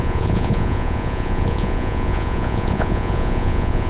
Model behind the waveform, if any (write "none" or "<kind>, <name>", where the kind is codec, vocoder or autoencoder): vocoder, Vocos